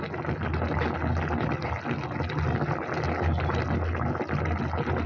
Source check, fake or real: real